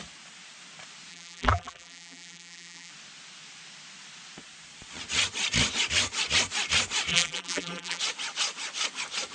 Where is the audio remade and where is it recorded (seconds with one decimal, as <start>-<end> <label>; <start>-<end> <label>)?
0.0-1.1 recorded; 1.1-2.9 remade; 2.9-7.1 recorded; 7.1-8.0 remade; 8.0-9.3 recorded